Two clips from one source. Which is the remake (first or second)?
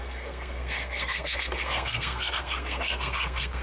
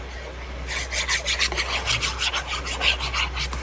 first